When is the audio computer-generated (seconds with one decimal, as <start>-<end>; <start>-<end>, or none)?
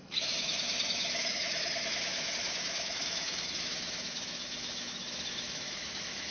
0.0-6.3